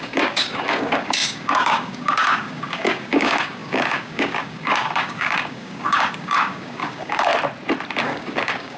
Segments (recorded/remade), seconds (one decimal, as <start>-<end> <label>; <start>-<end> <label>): 0.0-7.3 remade; 7.3-8.0 recorded; 8.0-8.8 remade